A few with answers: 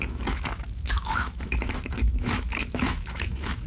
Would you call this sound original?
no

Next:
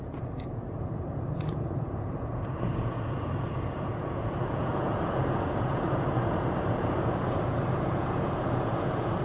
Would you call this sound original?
no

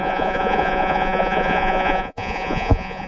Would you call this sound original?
no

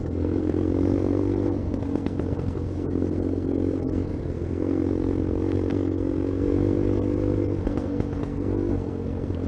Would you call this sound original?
no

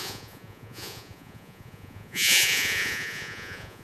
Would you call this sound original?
no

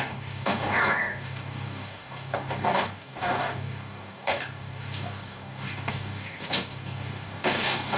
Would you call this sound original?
no